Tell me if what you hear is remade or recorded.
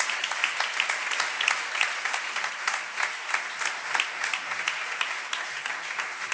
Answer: recorded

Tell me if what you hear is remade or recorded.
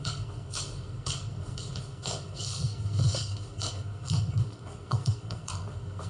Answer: remade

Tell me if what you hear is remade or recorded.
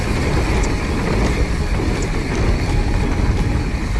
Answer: recorded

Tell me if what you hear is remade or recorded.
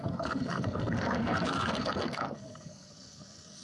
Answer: remade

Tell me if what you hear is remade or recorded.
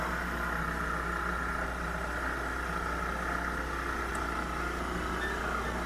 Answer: recorded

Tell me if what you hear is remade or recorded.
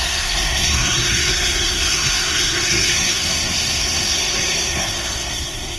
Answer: remade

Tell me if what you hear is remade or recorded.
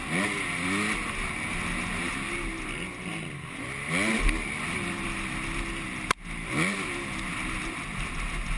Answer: recorded